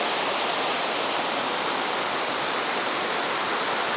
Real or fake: real